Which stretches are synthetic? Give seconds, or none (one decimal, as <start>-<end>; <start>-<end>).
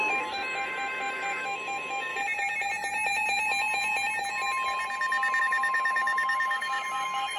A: 0.0-2.1; 5.4-7.4